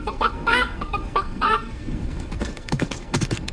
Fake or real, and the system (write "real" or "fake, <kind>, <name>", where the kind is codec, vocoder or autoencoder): fake, codec, SNAC